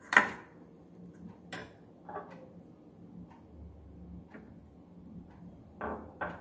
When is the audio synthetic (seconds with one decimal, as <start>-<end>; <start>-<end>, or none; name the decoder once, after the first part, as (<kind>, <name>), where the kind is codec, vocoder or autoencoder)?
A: 0.0-1.6 (vocoder, BigVGAN v2); 5.4-6.4